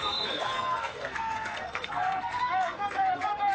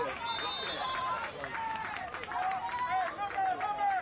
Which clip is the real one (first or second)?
second